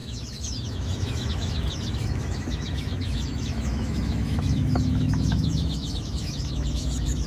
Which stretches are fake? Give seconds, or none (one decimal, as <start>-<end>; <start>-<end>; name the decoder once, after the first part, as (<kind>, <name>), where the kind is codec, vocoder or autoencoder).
0.0-7.3 (autoencoder, DAC-VAE)